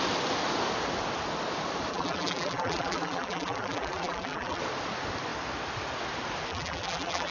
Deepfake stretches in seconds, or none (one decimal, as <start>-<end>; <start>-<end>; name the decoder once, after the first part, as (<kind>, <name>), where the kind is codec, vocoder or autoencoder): 1.9-4.6 (vocoder, BigVGAN v2); 6.5-7.3